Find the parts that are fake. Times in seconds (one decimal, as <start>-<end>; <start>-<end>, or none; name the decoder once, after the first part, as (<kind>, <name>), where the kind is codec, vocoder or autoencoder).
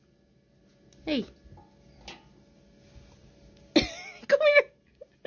none